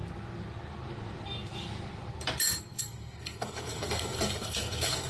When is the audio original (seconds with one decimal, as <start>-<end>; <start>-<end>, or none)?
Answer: 0.0-2.6